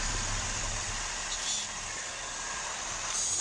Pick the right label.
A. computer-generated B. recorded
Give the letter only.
B